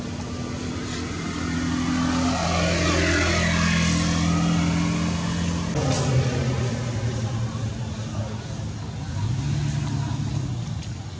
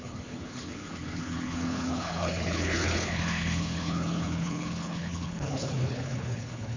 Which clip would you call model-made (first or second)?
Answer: second